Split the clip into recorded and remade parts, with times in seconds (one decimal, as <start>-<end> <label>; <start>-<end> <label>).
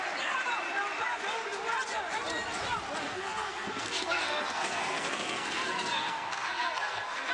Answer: 0.0-3.0 recorded; 3.0-7.3 remade